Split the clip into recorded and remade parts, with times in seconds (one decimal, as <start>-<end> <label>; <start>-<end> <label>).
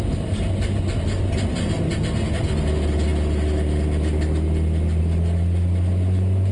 0.0-6.5 recorded